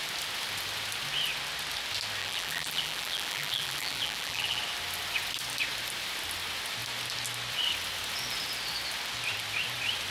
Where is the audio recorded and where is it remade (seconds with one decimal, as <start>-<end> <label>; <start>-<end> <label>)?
0.0-2.2 recorded; 2.2-4.6 remade; 4.6-10.1 recorded